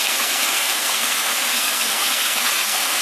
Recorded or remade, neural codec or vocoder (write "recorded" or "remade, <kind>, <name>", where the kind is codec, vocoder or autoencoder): remade, codec, SNAC